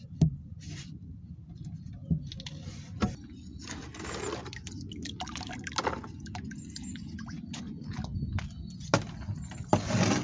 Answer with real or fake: real